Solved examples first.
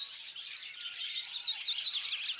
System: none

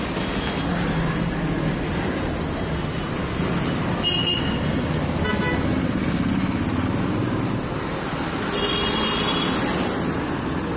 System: none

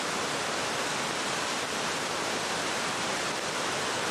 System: none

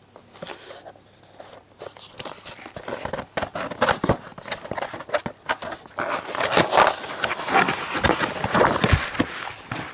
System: none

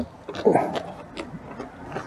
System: none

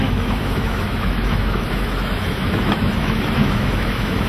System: autoencoder, DAC-VAE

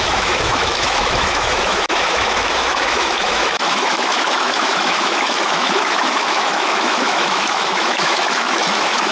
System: autoencoder, DAC-VAE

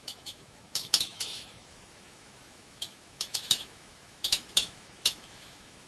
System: autoencoder, DAC-VAE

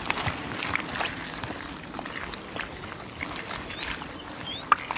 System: none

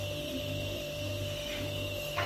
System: autoencoder, DAC-VAE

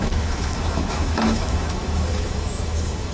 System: autoencoder, DAC-VAE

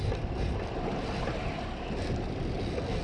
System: none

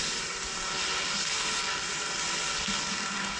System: none